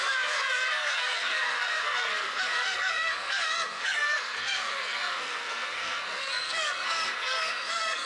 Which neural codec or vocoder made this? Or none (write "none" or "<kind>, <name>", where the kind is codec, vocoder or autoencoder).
codec, SNAC